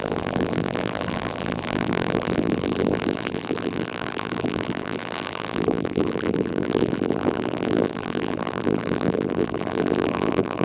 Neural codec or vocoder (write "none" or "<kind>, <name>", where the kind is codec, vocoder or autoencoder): vocoder, BigVGAN v2